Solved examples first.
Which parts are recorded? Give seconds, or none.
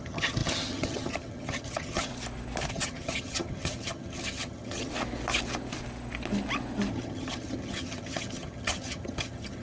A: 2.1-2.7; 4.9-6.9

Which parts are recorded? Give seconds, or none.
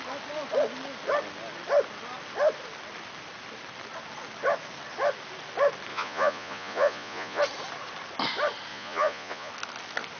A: 0.0-5.9; 7.4-8.7; 9.5-10.2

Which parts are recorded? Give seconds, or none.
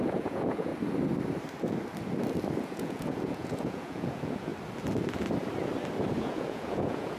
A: 0.7-2.6; 4.5-6.2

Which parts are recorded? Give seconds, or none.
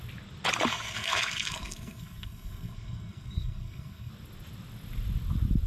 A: 0.0-0.7; 4.1-5.7